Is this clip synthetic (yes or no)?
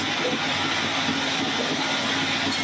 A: no